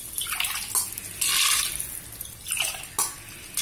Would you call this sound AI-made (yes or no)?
no